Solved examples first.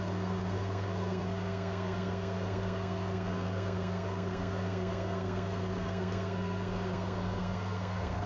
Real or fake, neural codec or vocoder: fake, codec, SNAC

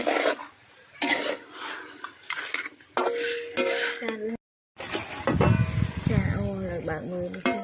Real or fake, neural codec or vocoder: real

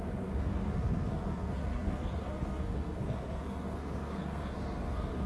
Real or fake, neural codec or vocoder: fake, codec, SNAC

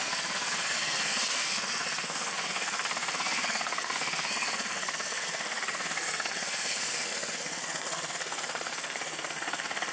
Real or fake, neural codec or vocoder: fake, codec, SNAC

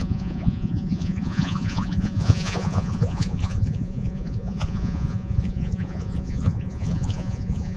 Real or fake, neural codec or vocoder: fake, vocoder, Vocos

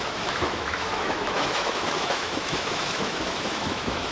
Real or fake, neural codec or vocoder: fake, autoencoder, DAC-VAE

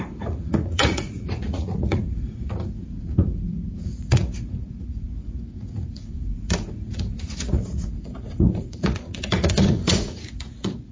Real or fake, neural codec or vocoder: fake, vocoder, Vocos